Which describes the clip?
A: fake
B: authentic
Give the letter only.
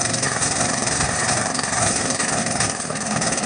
A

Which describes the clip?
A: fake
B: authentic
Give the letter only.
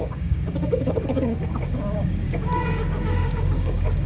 A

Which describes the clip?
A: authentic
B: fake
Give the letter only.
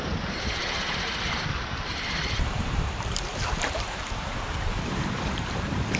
B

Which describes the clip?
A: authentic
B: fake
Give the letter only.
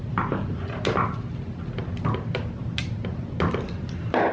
A